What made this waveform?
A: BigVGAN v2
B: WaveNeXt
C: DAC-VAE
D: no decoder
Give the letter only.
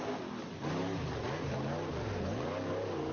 D